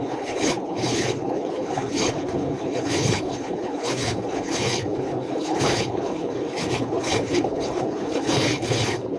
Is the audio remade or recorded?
remade